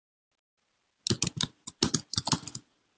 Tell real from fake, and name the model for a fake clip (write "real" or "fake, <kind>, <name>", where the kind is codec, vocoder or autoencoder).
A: real